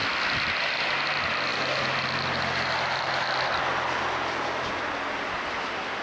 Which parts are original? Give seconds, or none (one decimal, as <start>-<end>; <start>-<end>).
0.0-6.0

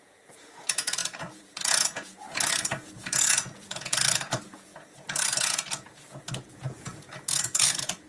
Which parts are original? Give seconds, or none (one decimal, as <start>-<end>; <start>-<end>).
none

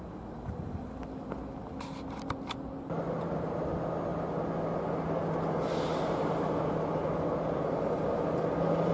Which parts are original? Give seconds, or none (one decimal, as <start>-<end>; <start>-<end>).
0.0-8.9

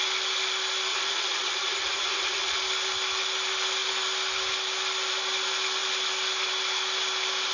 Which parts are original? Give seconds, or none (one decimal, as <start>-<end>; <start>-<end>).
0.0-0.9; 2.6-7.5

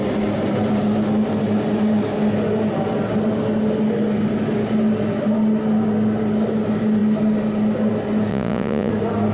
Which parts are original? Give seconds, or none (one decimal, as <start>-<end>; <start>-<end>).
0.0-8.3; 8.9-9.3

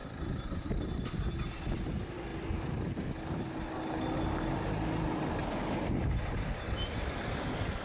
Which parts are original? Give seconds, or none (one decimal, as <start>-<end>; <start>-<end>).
0.0-7.8

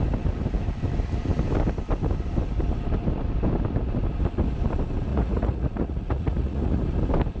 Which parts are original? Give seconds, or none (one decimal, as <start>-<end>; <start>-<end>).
0.0-5.1; 6.8-7.4